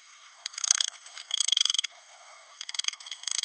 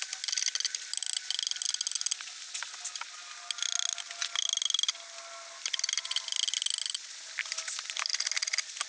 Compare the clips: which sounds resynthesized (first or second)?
first